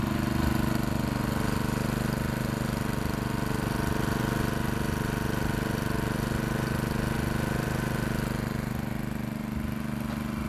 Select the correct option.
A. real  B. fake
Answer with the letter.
A